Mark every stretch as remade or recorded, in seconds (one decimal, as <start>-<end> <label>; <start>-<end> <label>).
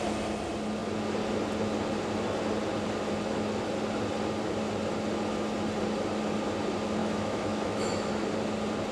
0.0-7.0 recorded; 7.0-8.1 remade; 8.1-8.9 recorded